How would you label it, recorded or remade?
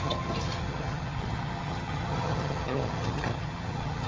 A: remade